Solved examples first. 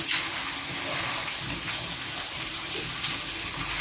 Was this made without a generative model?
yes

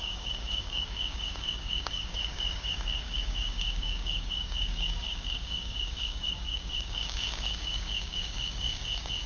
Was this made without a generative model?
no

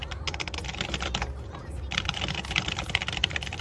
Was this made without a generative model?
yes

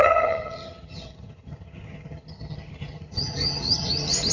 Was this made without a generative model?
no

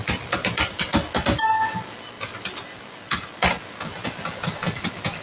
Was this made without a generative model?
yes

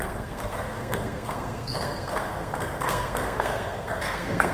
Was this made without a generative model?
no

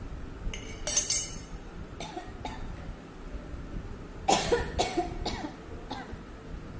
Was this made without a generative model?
yes